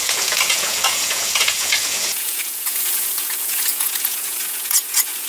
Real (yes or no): no